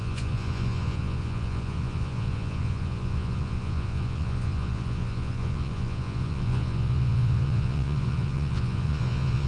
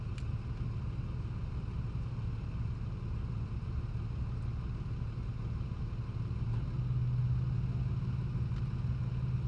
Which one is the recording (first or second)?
second